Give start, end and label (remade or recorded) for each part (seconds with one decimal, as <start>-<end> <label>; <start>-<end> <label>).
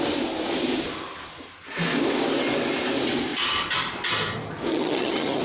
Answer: 0.0-4.7 recorded; 4.7-5.4 remade